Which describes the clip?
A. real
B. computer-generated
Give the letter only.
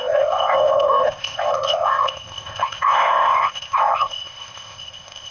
B